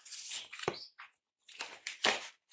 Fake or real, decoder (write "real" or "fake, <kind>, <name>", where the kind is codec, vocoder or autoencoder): real